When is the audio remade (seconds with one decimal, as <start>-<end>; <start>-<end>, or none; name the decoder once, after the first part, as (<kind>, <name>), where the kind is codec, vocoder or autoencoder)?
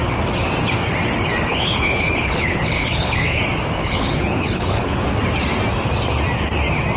1.5-3.4 (codec, HILCodec); 3.8-5.0